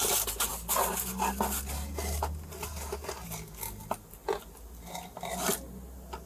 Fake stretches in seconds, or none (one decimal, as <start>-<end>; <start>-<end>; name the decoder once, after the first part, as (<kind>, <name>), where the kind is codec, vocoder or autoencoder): none